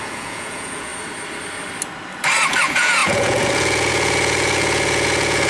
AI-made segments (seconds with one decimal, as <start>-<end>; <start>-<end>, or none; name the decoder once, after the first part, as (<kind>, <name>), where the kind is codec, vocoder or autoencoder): 0.0-0.9 (vocoder, Vocos); 2.6-5.5